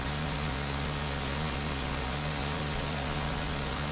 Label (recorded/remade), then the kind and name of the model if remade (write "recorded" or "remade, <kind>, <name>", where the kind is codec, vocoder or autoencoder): remade, vocoder, Vocos